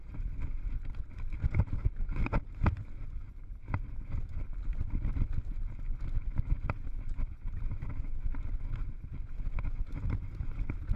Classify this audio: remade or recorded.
recorded